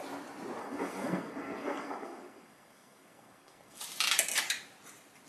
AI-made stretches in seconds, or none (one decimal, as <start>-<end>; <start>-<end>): 0.6-3.8